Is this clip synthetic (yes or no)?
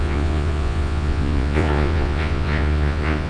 yes